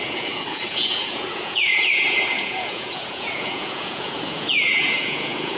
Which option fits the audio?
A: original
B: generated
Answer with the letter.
B